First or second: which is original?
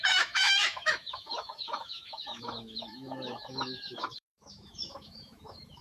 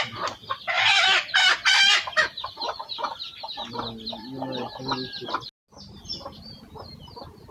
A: second